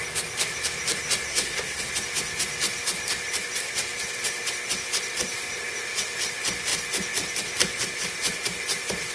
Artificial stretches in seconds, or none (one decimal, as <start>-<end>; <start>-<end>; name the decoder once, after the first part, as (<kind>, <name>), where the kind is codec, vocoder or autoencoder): 1.3-1.9 (codec, SNAC)